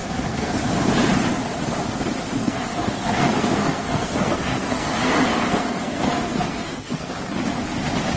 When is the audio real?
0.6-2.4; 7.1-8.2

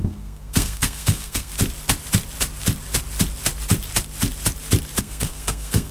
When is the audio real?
1.5-5.0

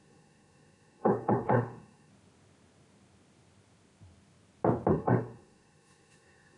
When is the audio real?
2.1-4.9

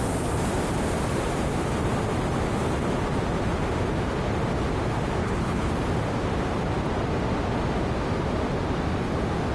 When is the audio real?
0.0-5.2; 5.7-9.5

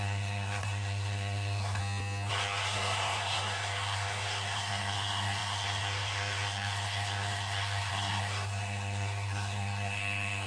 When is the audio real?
1.8-2.3

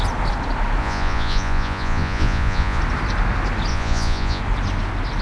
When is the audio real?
0.0-0.8; 2.8-3.7; 4.4-5.2